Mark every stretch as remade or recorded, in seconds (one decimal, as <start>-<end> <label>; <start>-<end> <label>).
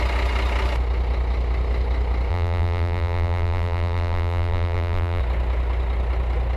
0.0-2.3 recorded; 2.3-5.2 remade; 5.2-6.6 recorded